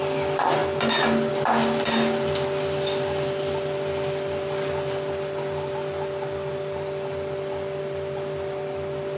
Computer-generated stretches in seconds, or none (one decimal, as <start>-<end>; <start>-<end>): none